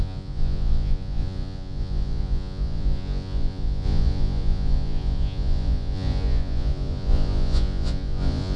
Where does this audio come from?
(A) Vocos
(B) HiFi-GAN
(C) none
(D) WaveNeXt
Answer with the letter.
A